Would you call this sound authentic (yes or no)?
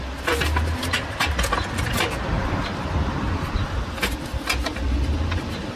yes